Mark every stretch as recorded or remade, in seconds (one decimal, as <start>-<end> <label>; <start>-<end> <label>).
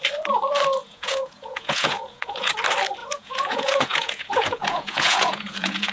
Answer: 0.0-0.8 recorded; 0.8-2.5 remade; 2.5-3.0 recorded; 3.0-5.9 remade